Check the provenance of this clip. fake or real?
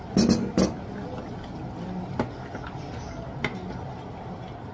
real